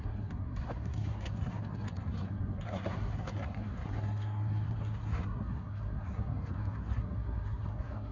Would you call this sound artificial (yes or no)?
yes